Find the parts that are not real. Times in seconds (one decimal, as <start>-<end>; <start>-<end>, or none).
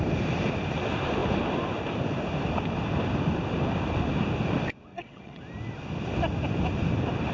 4.9-5.4